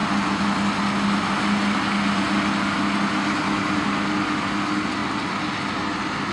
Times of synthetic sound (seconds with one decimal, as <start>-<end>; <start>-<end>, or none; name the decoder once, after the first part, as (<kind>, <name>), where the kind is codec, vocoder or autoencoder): none